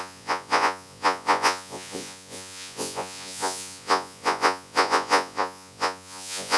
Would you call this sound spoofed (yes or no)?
yes